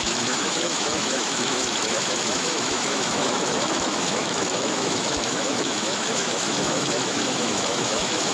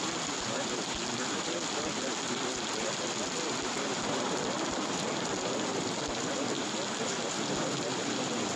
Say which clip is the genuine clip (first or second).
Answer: second